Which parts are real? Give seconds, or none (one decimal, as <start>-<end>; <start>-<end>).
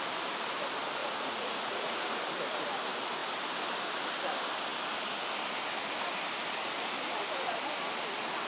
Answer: 0.0-1.0; 2.0-8.5